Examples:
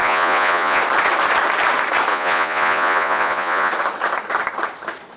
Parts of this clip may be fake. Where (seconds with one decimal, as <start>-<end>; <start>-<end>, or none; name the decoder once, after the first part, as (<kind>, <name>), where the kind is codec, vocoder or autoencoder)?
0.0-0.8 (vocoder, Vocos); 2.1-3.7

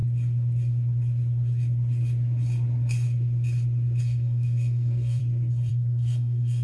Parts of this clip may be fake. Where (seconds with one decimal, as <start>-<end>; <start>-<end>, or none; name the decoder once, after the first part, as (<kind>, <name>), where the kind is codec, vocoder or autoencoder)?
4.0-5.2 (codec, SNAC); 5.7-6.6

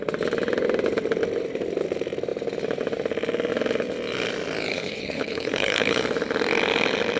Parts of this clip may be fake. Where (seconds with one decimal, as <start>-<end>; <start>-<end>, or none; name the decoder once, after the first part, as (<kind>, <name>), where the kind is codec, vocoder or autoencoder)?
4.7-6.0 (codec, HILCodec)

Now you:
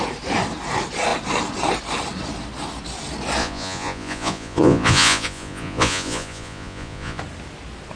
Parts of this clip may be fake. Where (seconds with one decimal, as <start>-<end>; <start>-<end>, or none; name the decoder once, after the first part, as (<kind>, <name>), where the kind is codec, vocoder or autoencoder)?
3.4-7.2 (vocoder, Vocos)

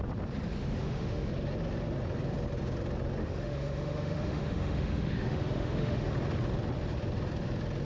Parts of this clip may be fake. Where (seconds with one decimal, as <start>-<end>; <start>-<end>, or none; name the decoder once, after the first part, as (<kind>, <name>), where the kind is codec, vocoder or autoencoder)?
0.6-1.3 (autoencoder, DAC-VAE); 3.2-6.1

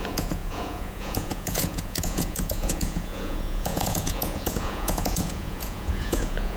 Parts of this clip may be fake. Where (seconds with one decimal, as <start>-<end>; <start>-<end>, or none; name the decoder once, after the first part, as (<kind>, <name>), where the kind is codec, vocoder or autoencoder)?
0.0-6.6 (vocoder, Vocos)

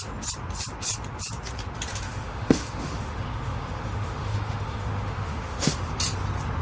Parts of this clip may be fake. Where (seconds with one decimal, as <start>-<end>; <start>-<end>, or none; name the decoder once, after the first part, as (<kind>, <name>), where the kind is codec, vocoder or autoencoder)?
1.9-5.9 (autoencoder, DAC-VAE)

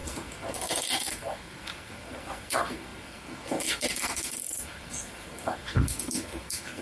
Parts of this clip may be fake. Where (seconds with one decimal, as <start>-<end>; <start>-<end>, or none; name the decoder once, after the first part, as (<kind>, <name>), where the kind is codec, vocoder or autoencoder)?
0.0-6.8 (codec, SNAC)